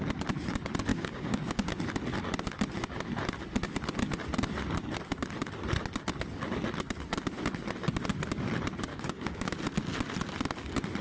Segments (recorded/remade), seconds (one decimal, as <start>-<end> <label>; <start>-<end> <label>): 0.0-0.9 recorded; 0.9-1.7 remade; 1.7-8.9 recorded; 8.9-9.5 remade; 9.5-11.0 recorded